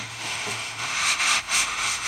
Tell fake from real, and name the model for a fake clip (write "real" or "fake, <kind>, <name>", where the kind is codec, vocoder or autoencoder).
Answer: fake, autoencoder, DAC-VAE